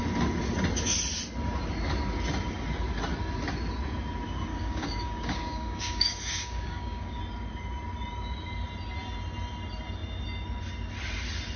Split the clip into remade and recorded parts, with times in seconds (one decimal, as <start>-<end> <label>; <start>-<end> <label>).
0.0-4.5 recorded; 4.5-7.2 remade; 7.2-11.6 recorded